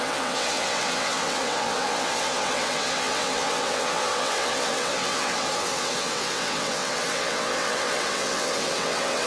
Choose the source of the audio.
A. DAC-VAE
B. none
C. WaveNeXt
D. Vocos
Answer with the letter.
C